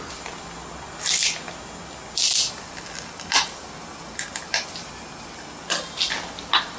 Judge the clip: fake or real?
real